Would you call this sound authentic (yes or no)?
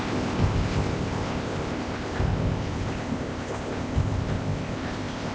no